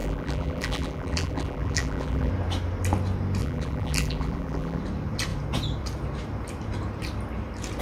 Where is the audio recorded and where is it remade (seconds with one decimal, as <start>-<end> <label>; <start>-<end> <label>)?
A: 0.0-2.3 remade; 2.3-3.4 recorded; 3.4-4.8 remade; 4.8-7.8 recorded